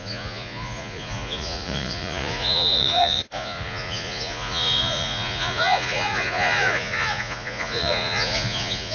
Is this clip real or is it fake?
fake